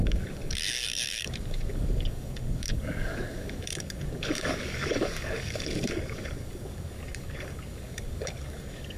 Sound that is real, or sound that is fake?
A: fake